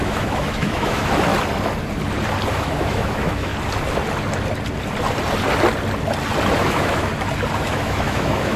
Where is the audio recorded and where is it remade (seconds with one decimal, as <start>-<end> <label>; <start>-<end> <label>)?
0.0-1.3 remade; 1.3-2.5 recorded; 2.5-3.5 remade; 3.5-6.6 recorded; 6.6-7.1 remade; 7.1-7.6 recorded; 7.6-8.6 remade